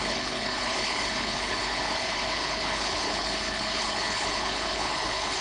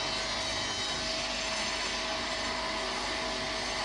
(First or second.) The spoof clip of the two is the first